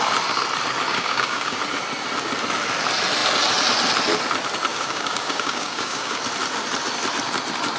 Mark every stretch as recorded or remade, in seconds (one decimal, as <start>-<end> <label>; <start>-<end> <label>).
0.0-0.9 recorded; 0.9-1.6 remade; 1.6-4.7 recorded; 4.7-6.2 remade; 6.2-7.8 recorded